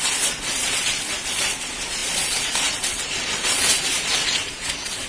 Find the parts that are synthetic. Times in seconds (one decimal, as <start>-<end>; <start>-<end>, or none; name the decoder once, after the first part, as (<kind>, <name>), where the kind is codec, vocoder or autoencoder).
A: 0.0-5.1 (vocoder, Vocos)